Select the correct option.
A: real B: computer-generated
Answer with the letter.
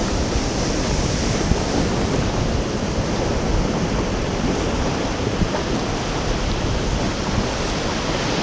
A